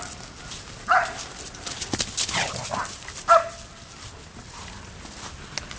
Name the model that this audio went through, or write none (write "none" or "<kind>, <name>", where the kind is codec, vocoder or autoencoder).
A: none